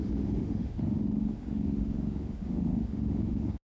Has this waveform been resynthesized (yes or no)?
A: yes